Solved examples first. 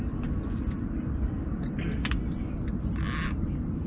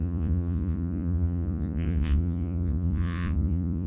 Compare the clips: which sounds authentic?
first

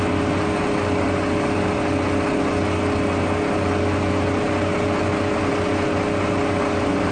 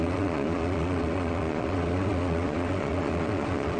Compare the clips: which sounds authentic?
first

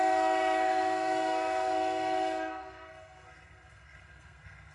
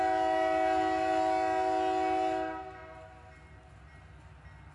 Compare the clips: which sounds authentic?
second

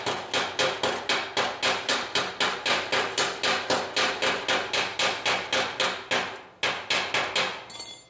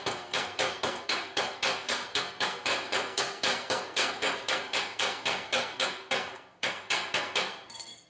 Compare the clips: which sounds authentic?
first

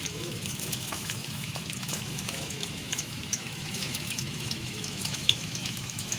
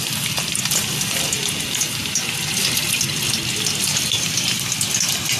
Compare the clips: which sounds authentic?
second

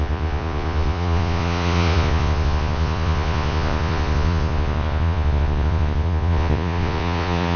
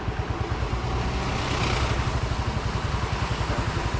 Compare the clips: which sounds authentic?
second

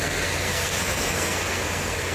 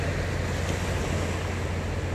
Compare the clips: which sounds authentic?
second